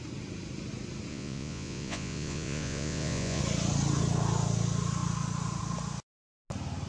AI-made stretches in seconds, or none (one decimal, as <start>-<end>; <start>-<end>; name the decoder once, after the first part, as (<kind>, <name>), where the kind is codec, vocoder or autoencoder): 1.1-3.4 (vocoder, Vocos)